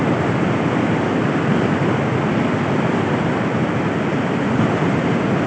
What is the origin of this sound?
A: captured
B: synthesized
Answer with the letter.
A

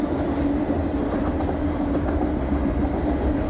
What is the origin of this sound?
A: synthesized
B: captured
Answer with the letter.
B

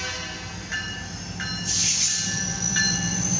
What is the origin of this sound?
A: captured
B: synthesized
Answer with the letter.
A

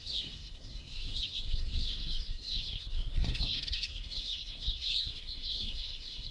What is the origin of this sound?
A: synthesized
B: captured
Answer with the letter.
A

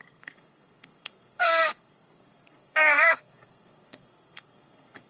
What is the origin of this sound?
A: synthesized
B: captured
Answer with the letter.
A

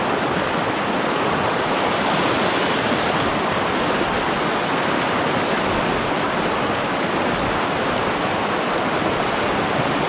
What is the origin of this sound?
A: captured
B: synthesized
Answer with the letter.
A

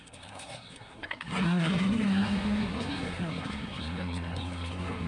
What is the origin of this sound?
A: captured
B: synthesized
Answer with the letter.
B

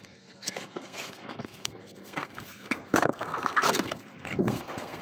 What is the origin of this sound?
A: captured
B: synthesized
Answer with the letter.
B